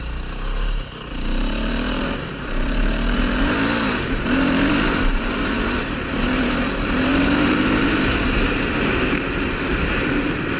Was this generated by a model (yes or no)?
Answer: yes